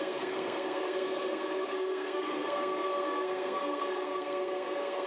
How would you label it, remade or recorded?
remade